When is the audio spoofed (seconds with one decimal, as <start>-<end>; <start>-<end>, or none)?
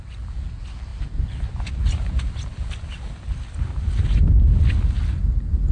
none